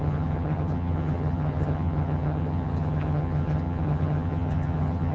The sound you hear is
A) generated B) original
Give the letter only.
A